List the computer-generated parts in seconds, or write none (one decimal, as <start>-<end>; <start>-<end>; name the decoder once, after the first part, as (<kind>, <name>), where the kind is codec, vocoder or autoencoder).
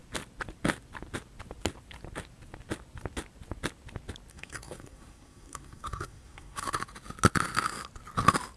4.3-6.8 (codec, SNAC)